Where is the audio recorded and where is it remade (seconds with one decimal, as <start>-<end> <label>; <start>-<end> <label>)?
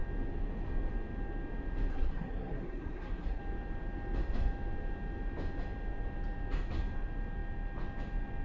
0.0-1.9 recorded; 1.9-3.4 remade; 3.4-8.4 recorded